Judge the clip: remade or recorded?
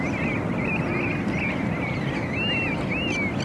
recorded